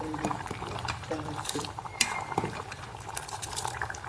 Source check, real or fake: fake